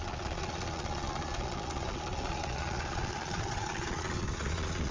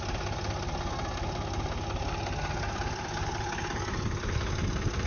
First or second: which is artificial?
first